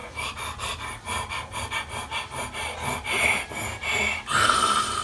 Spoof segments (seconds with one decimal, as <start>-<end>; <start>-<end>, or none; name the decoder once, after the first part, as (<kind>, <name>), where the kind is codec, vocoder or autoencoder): none